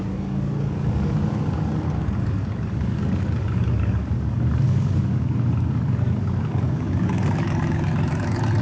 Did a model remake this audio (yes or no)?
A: yes